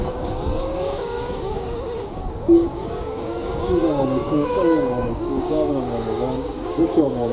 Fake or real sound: fake